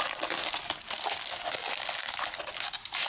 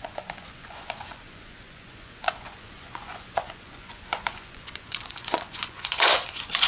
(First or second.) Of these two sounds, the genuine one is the first